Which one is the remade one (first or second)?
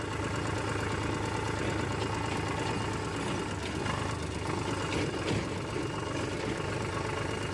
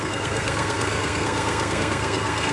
second